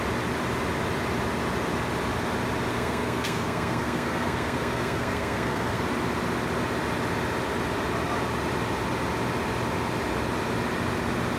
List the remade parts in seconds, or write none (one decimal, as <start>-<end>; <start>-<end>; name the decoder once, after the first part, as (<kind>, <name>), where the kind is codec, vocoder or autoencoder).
2.7-5.8 (codec, SNAC)